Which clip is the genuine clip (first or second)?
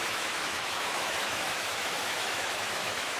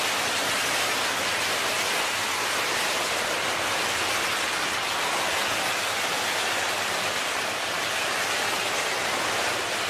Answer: second